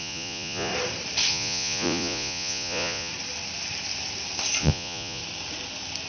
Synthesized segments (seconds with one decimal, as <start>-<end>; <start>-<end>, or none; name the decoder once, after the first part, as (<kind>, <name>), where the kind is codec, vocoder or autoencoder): 0.0-0.7 (vocoder, Vocos); 1.3-3.1; 4.6-5.2